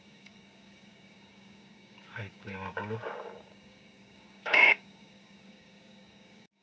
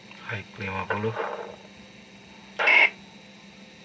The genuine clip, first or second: second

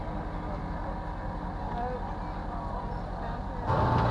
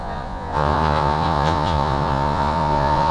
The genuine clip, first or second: first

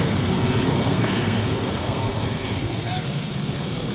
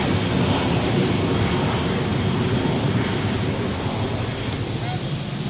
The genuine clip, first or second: second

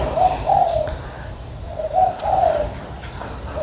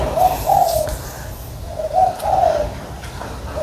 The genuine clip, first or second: second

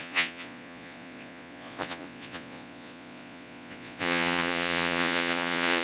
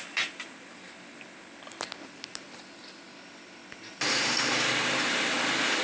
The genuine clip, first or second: second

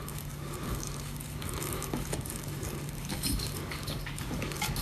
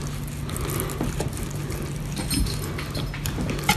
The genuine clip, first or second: second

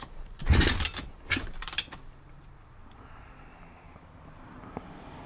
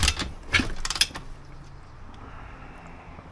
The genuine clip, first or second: second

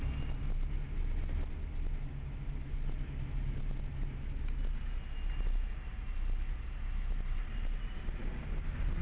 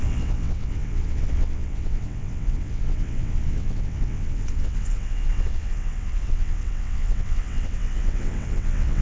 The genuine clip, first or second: first